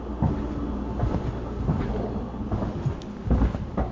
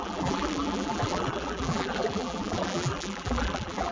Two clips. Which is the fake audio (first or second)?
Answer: second